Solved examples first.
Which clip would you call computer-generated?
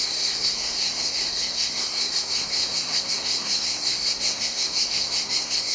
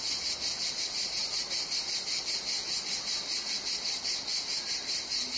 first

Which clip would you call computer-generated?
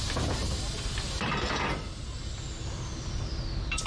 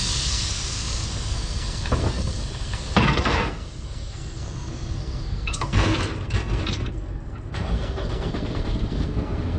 second